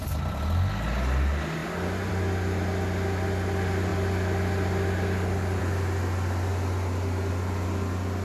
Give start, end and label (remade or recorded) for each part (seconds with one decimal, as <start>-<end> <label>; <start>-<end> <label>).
0.0-8.2 recorded